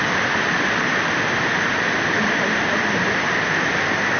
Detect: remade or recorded recorded